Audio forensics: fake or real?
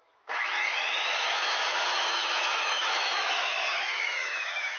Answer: fake